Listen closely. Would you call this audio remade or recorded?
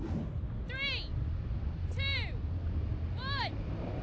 recorded